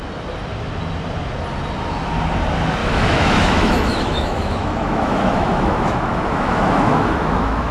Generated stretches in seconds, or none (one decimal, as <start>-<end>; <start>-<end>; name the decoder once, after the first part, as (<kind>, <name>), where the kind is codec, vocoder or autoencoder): 2.8-7.7 (autoencoder, DAC-VAE)